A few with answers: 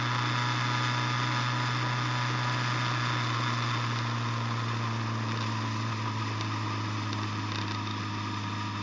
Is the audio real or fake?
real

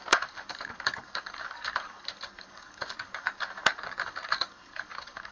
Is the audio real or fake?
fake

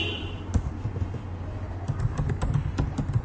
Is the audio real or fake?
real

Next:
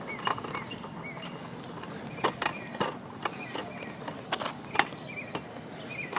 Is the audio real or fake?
real